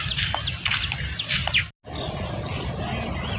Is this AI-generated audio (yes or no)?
no